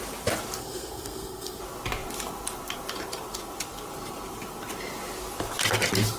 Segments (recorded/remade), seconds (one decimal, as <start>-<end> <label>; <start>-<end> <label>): 0.0-0.6 recorded; 0.6-1.6 remade; 1.6-6.2 recorded